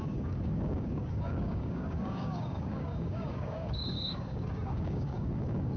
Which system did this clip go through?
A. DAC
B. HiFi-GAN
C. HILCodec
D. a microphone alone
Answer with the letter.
A